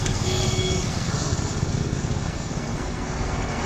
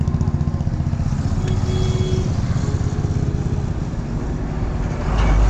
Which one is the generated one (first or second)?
first